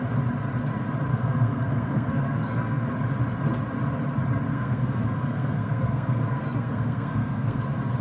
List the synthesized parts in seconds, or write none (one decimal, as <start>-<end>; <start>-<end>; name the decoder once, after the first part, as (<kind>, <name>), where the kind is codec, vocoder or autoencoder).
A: 1.1-2.9 (codec, SNAC); 4.5-7.6